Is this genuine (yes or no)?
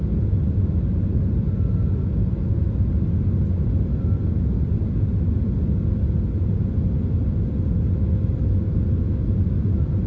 yes